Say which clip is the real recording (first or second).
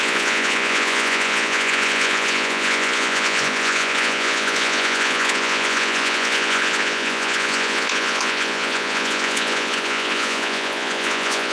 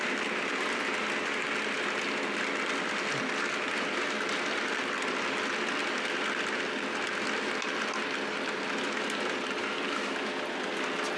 second